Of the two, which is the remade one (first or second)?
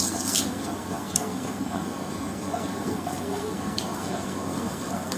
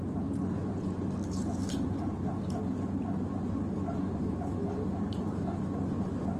first